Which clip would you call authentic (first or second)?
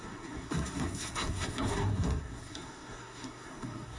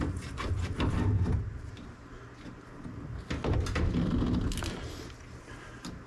second